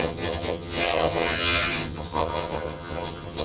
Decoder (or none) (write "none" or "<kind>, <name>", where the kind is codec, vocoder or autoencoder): vocoder, HiFi-GAN